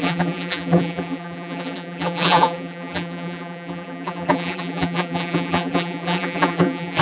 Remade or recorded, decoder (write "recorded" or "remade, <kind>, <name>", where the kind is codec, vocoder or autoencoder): remade, vocoder, BigVGAN v2